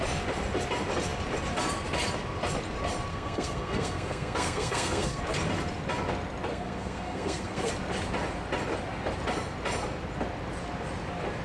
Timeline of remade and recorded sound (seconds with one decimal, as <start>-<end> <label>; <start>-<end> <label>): 0.0-3.1 recorded; 3.1-5.2 remade; 5.2-6.5 recorded; 6.5-7.7 remade; 7.7-11.4 recorded